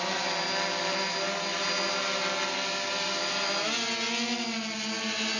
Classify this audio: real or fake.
real